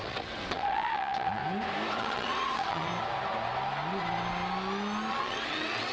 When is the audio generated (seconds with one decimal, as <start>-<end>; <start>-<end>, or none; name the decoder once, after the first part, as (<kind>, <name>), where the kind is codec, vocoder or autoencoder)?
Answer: 0.0-1.4 (vocoder, WaveNeXt); 2.0-2.9; 5.1-5.9